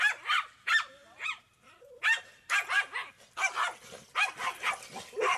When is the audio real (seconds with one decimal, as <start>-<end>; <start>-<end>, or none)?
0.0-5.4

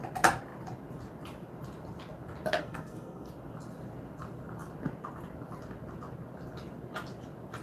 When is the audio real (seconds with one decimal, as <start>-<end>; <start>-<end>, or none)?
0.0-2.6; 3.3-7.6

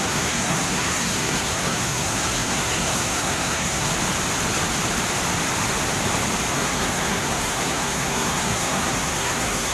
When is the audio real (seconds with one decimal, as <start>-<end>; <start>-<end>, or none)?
3.9-6.5

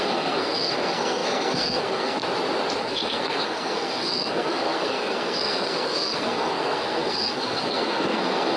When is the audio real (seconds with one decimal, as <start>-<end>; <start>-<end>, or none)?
2.2-2.8

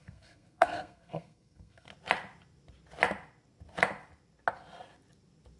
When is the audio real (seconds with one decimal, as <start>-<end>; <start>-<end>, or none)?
1.9-5.6